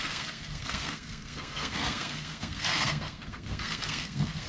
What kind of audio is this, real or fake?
fake